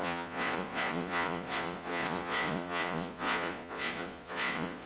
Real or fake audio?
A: fake